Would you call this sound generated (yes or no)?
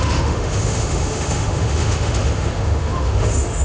yes